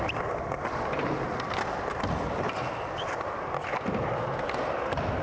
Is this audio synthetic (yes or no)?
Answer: no